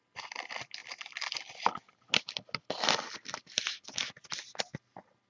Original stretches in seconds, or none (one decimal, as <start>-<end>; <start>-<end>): 0.0-5.3